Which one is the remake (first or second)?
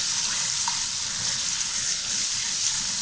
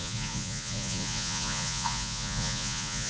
second